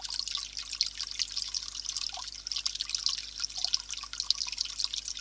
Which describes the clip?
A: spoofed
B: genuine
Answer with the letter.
B